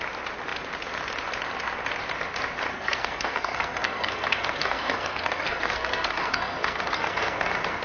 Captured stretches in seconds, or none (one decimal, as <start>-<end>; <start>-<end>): 0.0-2.7